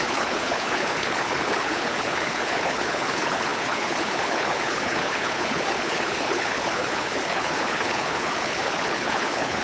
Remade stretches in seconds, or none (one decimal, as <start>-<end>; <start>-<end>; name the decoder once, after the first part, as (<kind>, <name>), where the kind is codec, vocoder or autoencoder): 0.0-9.6 (codec, HILCodec)